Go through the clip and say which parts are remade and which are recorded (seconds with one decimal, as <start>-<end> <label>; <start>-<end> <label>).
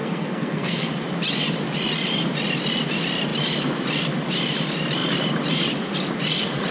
0.0-0.9 remade; 0.9-6.7 recorded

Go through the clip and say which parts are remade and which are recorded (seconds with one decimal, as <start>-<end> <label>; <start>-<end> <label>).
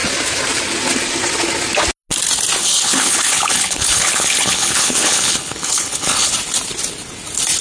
0.0-2.6 recorded; 2.6-6.3 remade; 6.3-7.6 recorded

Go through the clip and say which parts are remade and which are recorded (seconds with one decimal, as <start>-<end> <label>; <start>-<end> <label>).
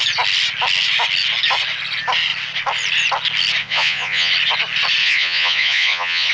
0.0-3.6 recorded; 3.6-4.3 remade; 4.3-5.0 recorded; 5.0-6.3 remade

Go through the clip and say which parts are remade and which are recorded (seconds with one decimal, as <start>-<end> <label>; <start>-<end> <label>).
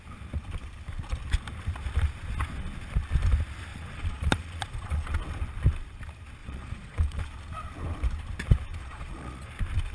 0.0-3.7 recorded; 3.7-5.1 remade; 5.1-6.4 recorded; 6.4-7.2 remade; 7.2-8.8 recorded; 8.8-9.5 remade; 9.5-9.9 recorded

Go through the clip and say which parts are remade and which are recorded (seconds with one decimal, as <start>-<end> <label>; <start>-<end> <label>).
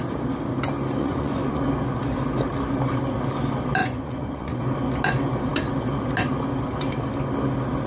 0.0-1.0 recorded; 1.0-1.6 remade; 1.6-3.8 recorded; 3.8-4.6 remade; 4.6-7.9 recorded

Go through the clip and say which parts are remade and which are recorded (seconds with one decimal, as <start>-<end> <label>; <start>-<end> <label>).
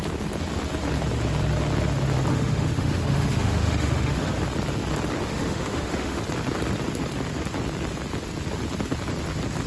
0.0-2.3 recorded; 2.3-4.4 remade; 4.4-5.2 recorded; 5.2-6.2 remade; 6.2-9.7 recorded